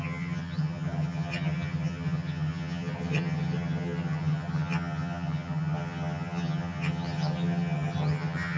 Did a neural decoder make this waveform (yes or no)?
yes